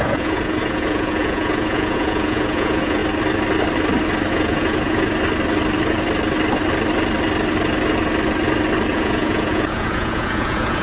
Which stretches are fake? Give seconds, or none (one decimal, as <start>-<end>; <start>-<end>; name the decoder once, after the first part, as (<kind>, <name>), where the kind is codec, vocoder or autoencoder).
0.0-3.0 (vocoder, Vocos); 4.3-5.1; 8.9-10.8

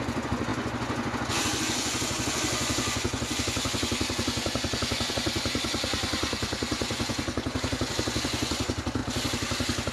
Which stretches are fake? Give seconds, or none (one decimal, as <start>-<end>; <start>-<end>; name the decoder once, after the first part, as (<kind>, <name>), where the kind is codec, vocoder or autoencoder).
0.0-9.0 (vocoder, Vocos)

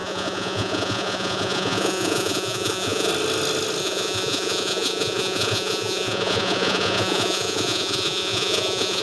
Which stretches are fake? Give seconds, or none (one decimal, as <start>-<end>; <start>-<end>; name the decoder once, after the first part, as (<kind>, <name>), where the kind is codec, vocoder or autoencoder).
0.0-3.1 (vocoder, Vocos); 3.8-9.0

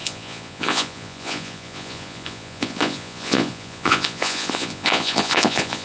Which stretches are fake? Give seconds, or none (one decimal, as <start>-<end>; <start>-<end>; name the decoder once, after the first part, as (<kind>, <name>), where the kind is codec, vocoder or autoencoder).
0.0-5.8 (vocoder, Vocos)

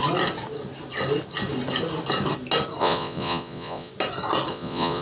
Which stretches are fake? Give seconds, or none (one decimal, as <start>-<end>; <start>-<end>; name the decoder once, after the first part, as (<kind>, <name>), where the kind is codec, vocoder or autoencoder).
2.8-3.9 (vocoder, Vocos); 4.5-5.0

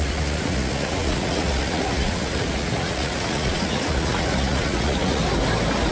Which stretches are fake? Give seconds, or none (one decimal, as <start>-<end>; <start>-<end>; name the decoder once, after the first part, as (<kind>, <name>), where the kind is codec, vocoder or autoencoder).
0.0-5.2 (vocoder, Vocos)

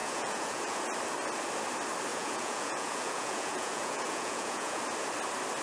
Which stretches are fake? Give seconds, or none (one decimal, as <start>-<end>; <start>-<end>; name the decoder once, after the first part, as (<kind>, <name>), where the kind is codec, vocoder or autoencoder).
0.0-0.8 (vocoder, Vocos); 2.1-4.8